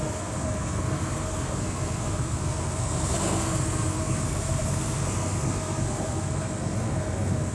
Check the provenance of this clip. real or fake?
fake